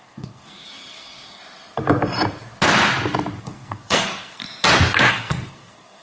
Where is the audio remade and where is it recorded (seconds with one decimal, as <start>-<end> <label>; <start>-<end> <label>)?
0.0-1.4 remade; 1.4-3.4 recorded; 3.4-4.4 remade; 4.4-5.1 recorded; 5.1-6.0 remade